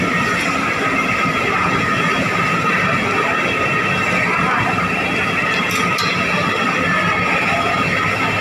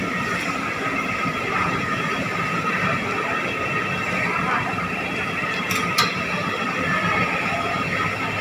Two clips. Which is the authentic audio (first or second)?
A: first